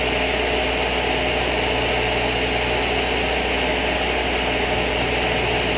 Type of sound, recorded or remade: recorded